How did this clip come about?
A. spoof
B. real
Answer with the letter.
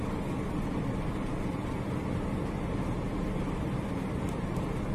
B